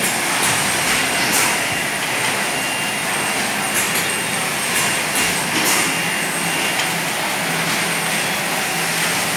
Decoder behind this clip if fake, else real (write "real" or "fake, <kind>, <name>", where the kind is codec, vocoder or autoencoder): real